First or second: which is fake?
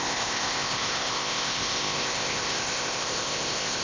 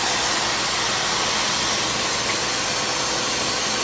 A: first